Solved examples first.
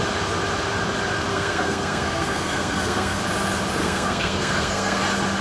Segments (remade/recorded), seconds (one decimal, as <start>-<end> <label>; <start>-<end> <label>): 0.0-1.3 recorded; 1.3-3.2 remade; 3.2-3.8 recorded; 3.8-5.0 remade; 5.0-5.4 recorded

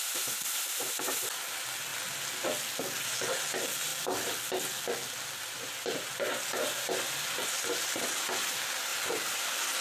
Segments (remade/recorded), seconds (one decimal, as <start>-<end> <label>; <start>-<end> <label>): 0.0-9.8 recorded

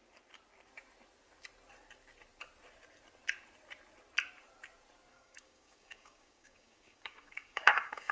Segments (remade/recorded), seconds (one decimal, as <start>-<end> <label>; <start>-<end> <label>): 0.0-5.1 recorded; 5.1-8.1 remade

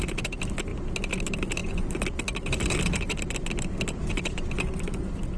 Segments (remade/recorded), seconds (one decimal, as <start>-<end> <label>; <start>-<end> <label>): 0.0-5.4 recorded

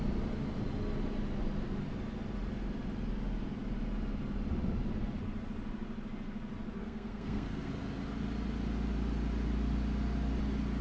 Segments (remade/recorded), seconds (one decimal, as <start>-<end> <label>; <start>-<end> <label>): 0.0-6.8 recorded; 6.8-7.7 remade; 7.7-10.8 recorded

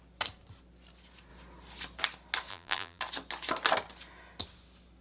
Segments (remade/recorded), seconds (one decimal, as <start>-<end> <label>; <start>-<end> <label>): 0.0-2.5 recorded; 2.5-3.0 remade; 3.0-5.0 recorded